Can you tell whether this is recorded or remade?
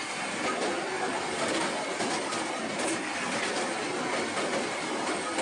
recorded